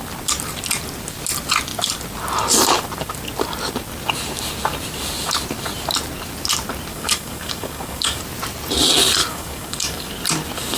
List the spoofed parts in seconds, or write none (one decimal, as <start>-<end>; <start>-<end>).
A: 6.9-8.2; 9.2-10.1